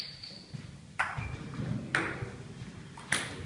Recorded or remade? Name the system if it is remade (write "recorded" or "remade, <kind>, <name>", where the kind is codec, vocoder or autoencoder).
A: recorded